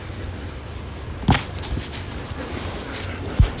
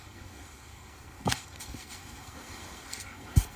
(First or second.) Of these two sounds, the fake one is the second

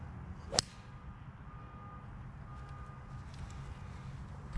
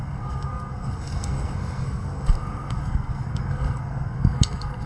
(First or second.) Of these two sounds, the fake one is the second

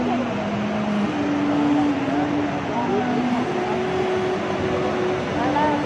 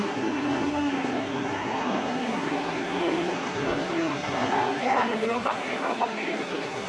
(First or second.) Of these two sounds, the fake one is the second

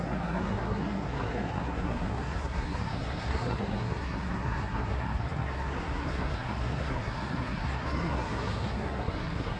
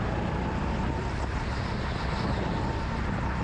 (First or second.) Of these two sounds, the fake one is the first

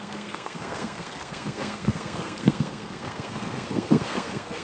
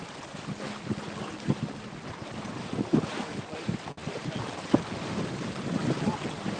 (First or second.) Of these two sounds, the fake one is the first